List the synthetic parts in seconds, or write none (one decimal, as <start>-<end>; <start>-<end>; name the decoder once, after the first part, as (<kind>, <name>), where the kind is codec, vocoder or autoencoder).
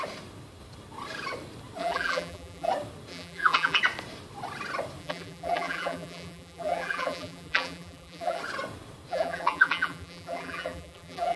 1.8-2.7 (vocoder, BigVGAN v2); 3.1-3.8; 5.0-8.4; 9.1-11.4